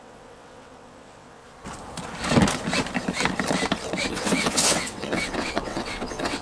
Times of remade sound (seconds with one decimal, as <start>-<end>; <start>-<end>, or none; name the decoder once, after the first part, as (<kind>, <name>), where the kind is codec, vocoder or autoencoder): 0.0-1.4 (vocoder, WaveNeXt); 4.1-6.4